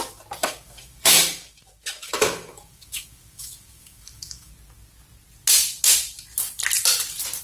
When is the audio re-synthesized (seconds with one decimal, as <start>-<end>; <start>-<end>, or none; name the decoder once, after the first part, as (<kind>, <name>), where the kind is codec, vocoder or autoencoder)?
0.4-4.5 (autoencoder, DAC-VAE)